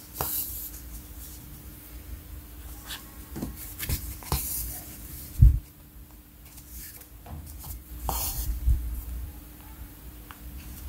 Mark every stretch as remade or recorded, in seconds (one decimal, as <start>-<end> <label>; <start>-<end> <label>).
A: 0.0-1.7 remade; 1.7-2.9 recorded; 2.9-10.9 remade